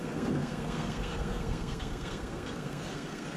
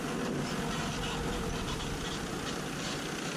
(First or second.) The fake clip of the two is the first